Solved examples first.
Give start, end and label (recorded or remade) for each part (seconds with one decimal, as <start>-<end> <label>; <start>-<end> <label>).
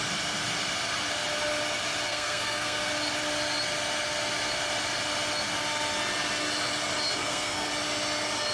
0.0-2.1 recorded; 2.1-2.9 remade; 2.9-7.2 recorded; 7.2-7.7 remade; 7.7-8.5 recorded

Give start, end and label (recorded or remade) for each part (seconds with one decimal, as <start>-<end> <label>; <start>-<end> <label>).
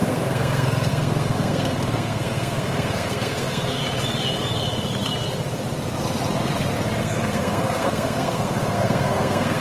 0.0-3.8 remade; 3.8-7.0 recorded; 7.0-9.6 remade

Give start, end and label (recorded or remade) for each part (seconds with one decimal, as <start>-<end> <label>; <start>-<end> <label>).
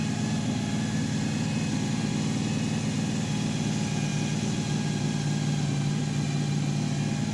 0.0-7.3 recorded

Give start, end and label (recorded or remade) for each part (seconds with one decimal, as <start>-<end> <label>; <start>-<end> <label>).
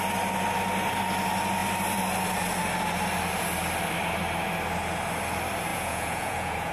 0.0-5.7 recorded; 5.7-6.7 remade